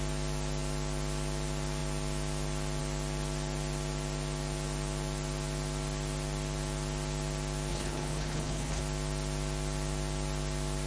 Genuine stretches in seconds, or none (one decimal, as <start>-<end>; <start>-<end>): 0.0-7.7; 8.8-10.9